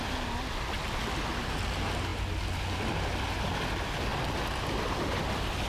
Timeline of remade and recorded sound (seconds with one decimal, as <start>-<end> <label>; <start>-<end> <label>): 0.0-5.7 recorded